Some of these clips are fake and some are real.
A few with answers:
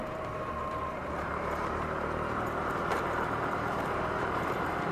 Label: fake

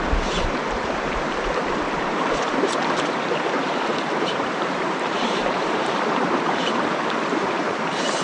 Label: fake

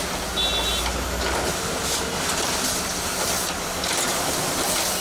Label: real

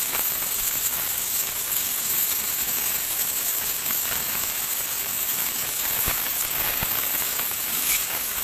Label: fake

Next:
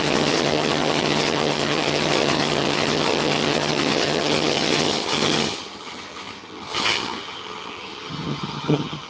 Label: fake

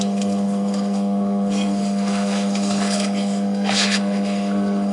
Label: fake